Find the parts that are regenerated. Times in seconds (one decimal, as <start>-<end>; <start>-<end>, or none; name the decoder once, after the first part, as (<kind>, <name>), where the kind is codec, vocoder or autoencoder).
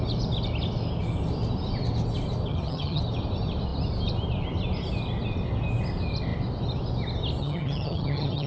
2.5-3.0 (vocoder, HiFi-GAN); 7.4-8.5